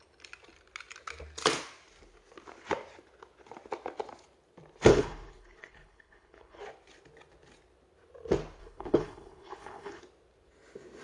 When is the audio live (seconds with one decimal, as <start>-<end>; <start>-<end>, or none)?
0.0-4.9; 6.6-8.6; 10.0-11.0